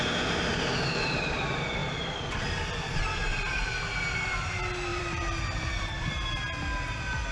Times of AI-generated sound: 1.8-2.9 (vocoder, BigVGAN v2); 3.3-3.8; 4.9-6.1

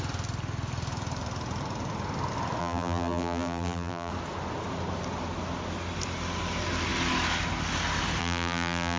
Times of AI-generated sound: 2.6-4.1 (vocoder, BigVGAN v2); 8.2-9.0

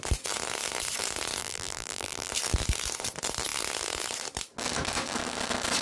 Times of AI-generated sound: 1.4-2.3 (vocoder, BigVGAN v2)